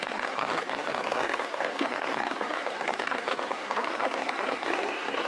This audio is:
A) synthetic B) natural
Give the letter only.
A